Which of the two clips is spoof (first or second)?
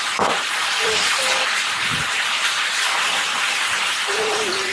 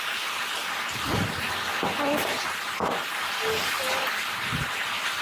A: first